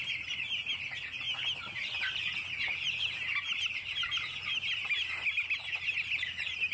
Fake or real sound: real